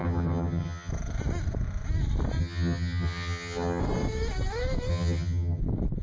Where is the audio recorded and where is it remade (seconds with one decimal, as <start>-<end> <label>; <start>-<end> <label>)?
0.0-0.9 remade; 0.9-2.4 recorded; 2.4-3.8 remade; 3.8-4.9 recorded; 4.9-5.6 remade; 5.6-6.0 recorded